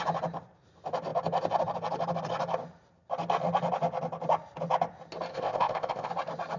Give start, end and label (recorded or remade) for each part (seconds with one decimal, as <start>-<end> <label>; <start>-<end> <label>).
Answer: 0.0-5.3 recorded; 5.3-6.1 remade; 6.1-6.6 recorded